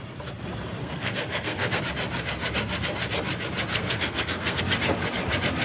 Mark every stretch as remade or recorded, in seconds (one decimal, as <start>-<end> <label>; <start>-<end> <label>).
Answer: 0.0-0.8 recorded; 0.8-1.8 remade; 1.8-3.7 recorded; 3.7-4.6 remade; 4.6-5.6 recorded